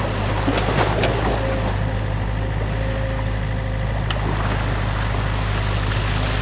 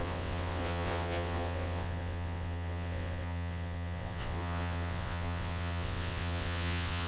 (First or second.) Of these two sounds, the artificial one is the second